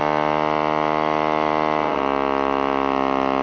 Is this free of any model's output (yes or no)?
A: yes